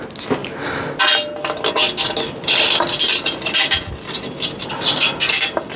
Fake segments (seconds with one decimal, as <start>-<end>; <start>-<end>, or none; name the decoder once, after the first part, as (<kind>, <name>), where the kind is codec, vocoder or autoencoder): none